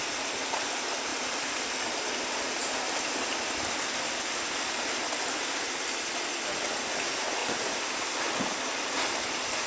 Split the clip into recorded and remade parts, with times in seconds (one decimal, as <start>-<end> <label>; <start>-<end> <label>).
0.0-9.7 recorded